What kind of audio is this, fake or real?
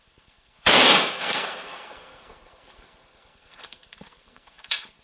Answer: fake